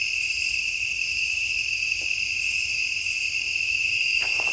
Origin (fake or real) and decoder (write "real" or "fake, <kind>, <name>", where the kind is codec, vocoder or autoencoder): real